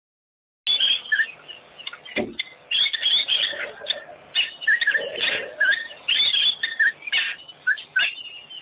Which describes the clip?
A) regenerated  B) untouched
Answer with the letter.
B